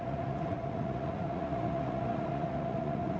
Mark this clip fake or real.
fake